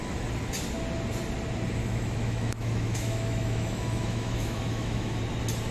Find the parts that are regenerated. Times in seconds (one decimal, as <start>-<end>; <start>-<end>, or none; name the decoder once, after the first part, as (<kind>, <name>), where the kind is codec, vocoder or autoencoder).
1.8-5.2 (autoencoder, DAC-VAE)